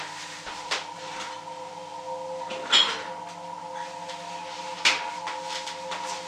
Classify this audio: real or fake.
real